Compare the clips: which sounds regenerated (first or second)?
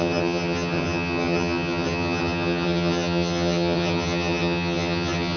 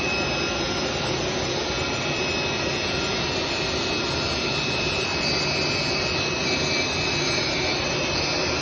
first